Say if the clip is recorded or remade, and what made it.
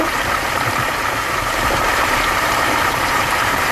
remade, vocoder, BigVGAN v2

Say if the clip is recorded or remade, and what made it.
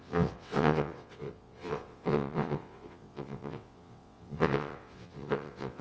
remade, vocoder, WaveNeXt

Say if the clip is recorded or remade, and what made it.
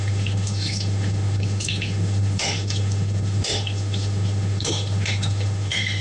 remade, autoencoder, DAC-VAE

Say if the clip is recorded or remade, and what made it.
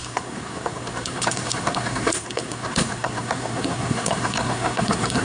remade, codec, SNAC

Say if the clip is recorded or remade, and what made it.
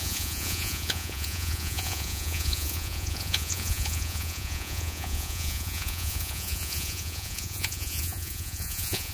remade, vocoder, Vocos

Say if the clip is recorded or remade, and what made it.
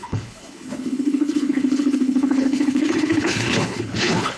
remade, codec, HILCodec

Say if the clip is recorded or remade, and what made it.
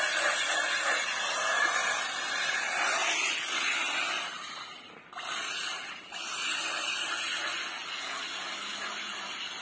recorded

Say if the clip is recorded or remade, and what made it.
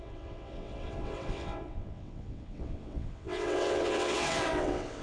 remade, vocoder, WaveNeXt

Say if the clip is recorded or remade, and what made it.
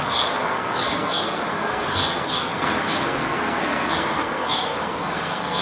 remade, codec, SNAC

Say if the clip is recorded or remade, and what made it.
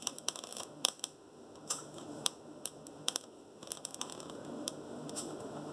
remade, autoencoder, DAC-VAE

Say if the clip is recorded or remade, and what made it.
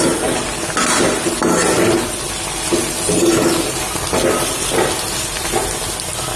recorded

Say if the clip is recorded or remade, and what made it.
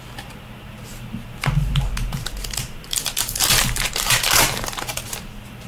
remade, vocoder, BigVGAN v2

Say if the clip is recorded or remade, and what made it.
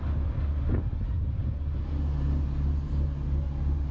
recorded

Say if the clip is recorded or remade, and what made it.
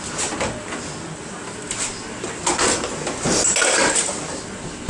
recorded